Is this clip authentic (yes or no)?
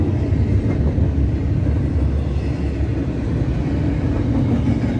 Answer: yes